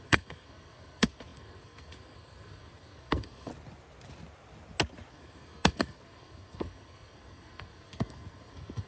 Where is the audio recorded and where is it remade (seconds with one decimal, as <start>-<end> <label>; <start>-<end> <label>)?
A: 0.0-3.5 remade; 3.5-5.1 recorded; 5.1-8.9 remade